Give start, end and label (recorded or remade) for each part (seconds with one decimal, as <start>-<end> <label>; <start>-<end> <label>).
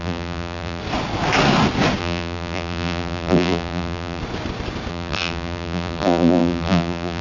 0.0-0.8 remade; 0.8-2.0 recorded; 2.0-4.2 remade; 4.2-4.9 recorded; 4.9-7.2 remade